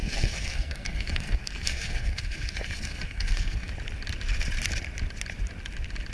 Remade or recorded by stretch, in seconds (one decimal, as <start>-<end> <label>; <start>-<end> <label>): 0.0-3.7 remade; 3.7-6.1 recorded